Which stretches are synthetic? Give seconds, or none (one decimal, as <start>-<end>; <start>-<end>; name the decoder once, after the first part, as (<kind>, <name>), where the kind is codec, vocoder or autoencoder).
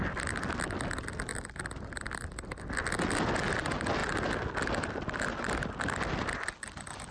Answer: none